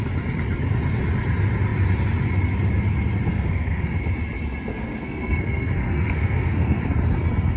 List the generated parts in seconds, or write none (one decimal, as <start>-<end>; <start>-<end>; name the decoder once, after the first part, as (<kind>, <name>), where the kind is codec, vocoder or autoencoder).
3.3-3.9 (codec, SNAC); 4.7-6.8